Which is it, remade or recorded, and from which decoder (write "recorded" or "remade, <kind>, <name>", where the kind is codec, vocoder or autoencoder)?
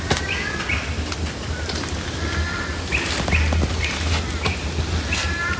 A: recorded